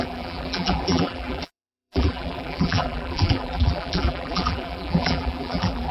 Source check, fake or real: fake